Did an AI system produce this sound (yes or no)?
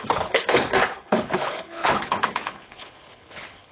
yes